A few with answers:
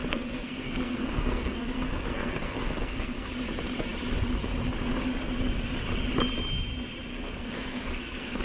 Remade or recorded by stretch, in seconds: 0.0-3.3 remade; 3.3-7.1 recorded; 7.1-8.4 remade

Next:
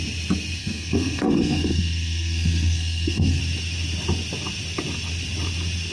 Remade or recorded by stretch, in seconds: 0.0-0.6 recorded; 0.6-3.4 remade; 3.4-5.9 recorded